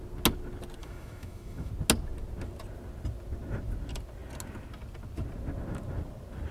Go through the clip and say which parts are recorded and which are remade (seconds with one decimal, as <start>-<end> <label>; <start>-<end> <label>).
0.0-0.8 recorded; 0.8-1.7 remade; 1.7-6.5 recorded